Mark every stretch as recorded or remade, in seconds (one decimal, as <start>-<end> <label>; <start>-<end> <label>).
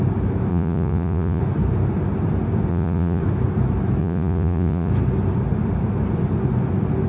0.0-0.5 recorded; 0.5-1.4 remade; 1.4-2.7 recorded; 2.7-3.2 remade; 3.2-4.0 recorded; 4.0-4.9 remade; 4.9-7.1 recorded